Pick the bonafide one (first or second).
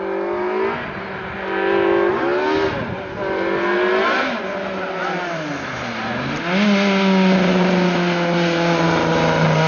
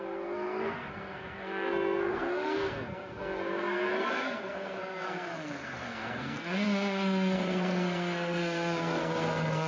first